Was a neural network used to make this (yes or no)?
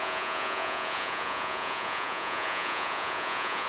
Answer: yes